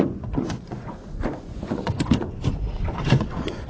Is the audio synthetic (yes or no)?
yes